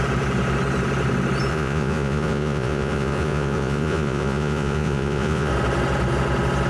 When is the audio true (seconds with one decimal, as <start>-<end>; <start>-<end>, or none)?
0.0-1.5; 5.5-6.7

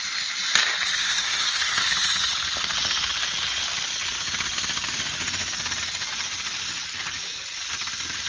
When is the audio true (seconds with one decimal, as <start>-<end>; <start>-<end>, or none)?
0.0-1.0; 1.8-8.3

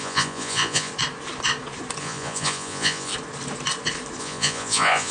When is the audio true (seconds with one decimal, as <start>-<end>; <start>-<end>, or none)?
0.9-2.0; 3.1-4.2

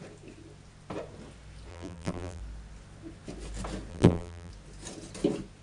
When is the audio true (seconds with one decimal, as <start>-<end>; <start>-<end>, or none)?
0.0-1.7; 2.4-3.9; 4.5-5.6